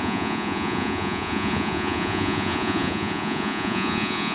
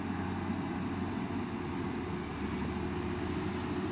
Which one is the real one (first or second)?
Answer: second